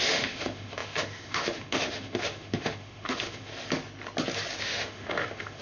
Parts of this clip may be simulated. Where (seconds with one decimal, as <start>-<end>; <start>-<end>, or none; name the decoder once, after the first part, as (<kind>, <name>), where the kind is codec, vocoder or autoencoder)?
0.0-3.5 (autoencoder, DAC-VAE); 4.6-5.6